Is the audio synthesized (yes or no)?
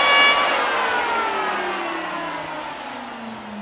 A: no